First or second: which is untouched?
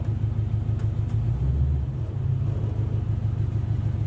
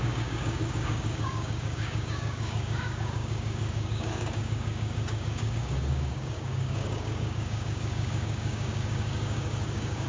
first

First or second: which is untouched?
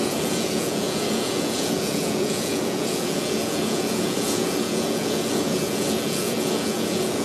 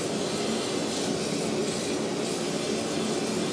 second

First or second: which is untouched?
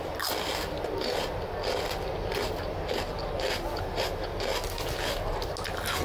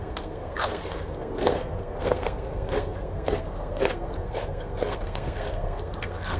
first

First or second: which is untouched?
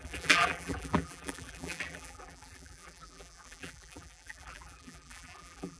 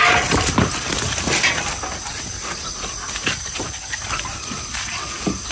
second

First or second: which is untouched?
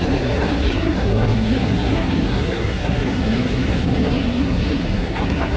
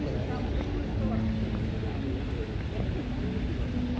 second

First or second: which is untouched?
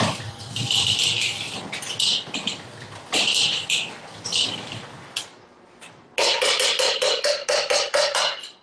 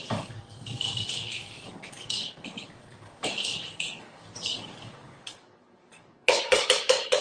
first